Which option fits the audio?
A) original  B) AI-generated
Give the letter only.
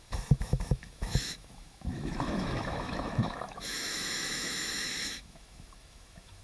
B